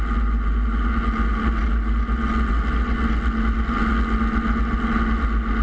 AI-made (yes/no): no